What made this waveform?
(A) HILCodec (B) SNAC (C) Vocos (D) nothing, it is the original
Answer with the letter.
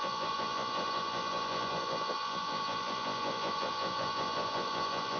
C